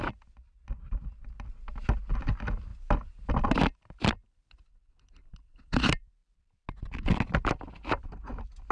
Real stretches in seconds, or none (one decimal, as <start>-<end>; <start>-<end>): 0.0-8.7